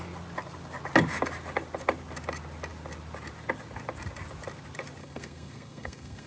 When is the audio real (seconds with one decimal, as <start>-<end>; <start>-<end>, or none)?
0.0-5.0